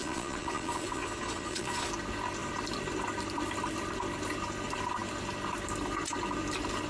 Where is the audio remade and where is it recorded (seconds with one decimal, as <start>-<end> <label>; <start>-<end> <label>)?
0.0-1.9 remade; 1.9-6.9 recorded